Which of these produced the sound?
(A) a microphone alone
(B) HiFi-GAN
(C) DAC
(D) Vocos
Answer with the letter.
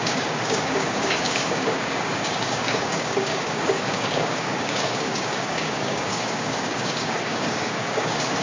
C